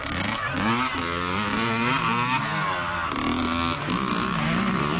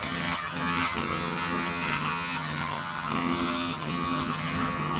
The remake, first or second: second